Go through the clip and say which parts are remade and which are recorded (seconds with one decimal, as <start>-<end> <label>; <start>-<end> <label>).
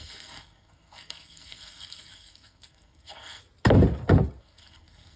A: 0.0-3.4 remade; 3.4-4.4 recorded; 4.4-5.2 remade